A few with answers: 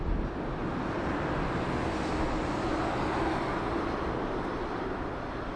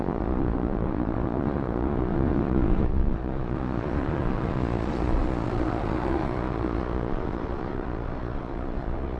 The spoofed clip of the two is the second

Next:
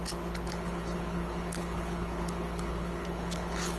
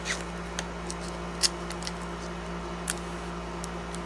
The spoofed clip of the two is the first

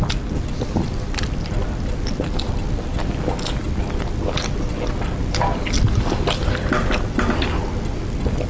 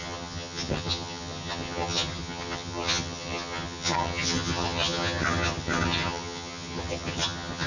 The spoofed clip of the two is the second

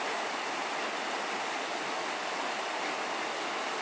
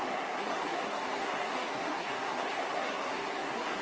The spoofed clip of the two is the second